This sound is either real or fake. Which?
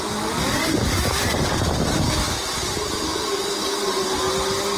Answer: real